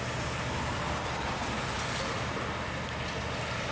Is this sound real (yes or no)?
yes